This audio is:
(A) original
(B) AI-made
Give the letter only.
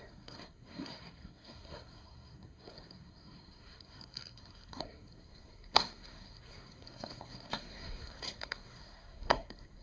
B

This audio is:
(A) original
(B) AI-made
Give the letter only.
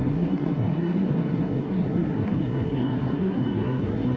B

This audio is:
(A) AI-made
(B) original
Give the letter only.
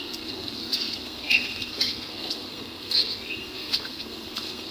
A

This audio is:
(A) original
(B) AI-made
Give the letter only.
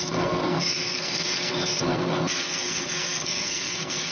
B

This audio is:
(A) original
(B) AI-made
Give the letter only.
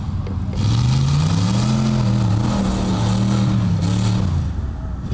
A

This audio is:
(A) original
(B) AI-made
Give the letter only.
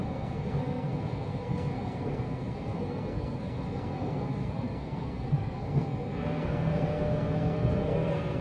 B